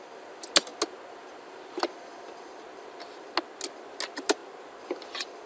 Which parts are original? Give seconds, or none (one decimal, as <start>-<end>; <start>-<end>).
0.0-5.5